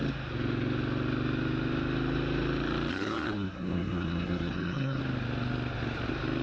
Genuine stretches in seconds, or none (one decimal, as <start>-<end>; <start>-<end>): 0.0-2.9; 5.0-6.4